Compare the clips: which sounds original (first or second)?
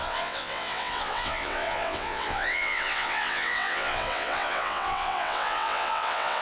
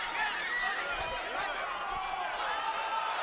second